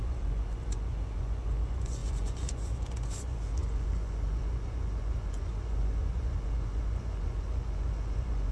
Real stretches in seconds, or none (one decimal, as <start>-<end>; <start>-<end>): none